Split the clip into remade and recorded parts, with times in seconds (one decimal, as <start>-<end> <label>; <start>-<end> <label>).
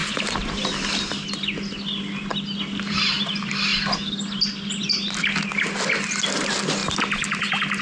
0.0-0.7 remade; 0.7-7.8 recorded